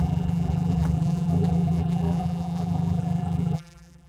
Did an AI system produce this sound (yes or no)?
yes